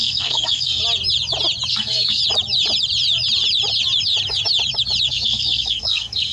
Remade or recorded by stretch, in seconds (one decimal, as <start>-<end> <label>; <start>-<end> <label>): 0.0-0.8 remade; 0.8-1.7 recorded; 1.7-2.2 remade; 2.2-5.1 recorded; 5.1-6.3 remade

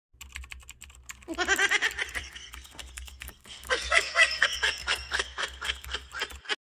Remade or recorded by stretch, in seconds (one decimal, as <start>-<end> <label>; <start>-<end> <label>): 0.0-2.2 recorded; 2.2-6.1 remade; 6.1-6.7 recorded